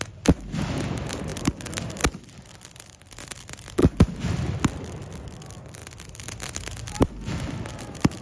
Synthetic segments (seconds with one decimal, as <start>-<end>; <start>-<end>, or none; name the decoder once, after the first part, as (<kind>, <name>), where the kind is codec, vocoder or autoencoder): 1.3-3.1 (vocoder, BigVGAN v2); 3.8-4.4